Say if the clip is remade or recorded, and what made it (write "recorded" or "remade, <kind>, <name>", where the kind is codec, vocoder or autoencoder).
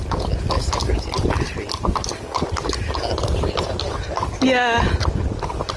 recorded